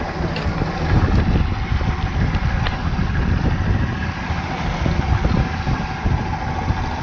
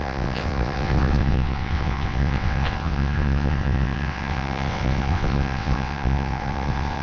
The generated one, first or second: second